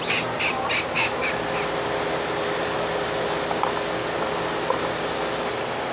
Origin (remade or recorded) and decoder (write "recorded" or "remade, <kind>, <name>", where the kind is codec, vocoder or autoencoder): recorded